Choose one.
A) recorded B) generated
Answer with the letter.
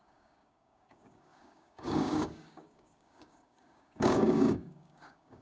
B